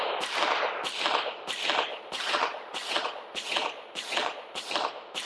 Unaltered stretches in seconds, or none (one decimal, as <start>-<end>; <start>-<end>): 0.0-1.9; 4.7-5.3